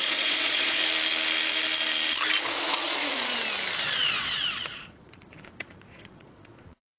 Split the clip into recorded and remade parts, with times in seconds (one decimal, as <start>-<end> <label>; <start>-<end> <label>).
0.0-0.8 remade; 0.8-2.4 recorded; 2.4-3.3 remade; 3.3-3.8 recorded; 3.8-7.0 remade